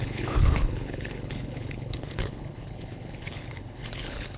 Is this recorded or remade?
remade